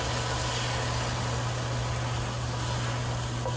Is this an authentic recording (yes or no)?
yes